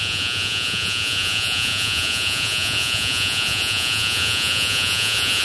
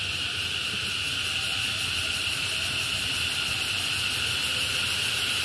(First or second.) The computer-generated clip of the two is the first